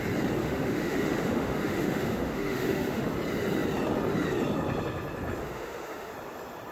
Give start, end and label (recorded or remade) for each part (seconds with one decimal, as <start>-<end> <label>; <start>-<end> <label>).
0.0-0.4 recorded; 0.4-3.1 remade; 3.1-5.4 recorded; 5.4-6.1 remade; 6.1-6.7 recorded